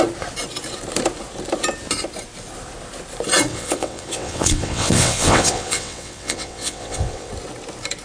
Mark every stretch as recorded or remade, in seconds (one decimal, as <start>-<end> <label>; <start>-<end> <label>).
0.0-3.5 recorded; 3.5-7.3 remade; 7.3-8.0 recorded